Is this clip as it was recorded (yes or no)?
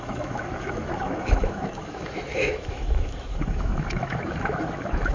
no